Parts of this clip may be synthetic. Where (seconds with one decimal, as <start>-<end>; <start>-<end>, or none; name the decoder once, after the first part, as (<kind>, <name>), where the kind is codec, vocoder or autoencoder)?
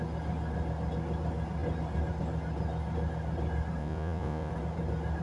3.8-4.5 (vocoder, Vocos)